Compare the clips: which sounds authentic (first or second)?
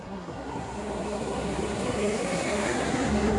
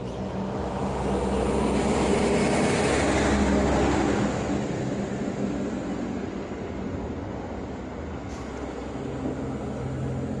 second